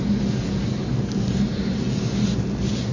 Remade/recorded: recorded